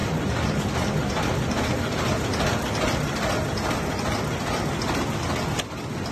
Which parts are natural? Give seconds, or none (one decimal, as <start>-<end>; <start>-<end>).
0.0-6.1